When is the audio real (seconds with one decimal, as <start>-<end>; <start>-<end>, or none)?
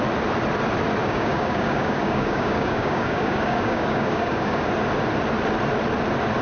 0.0-1.0; 4.6-6.4